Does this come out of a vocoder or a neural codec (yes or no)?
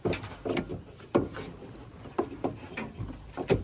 no